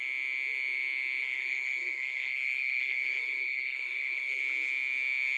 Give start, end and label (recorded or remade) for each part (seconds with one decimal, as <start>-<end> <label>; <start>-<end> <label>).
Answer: 0.0-1.2 recorded; 1.2-4.4 remade; 4.4-5.4 recorded